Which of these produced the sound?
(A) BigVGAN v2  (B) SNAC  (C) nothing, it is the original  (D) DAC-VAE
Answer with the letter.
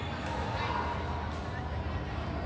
C